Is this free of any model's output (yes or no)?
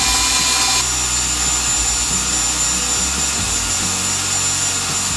yes